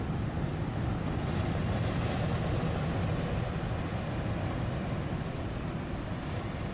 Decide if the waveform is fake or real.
real